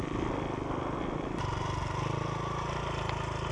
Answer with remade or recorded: recorded